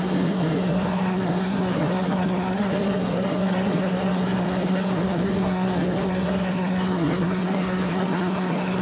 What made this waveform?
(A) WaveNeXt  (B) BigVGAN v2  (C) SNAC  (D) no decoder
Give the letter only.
C